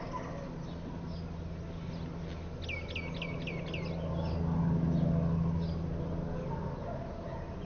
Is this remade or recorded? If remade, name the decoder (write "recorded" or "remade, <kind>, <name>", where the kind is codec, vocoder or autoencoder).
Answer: recorded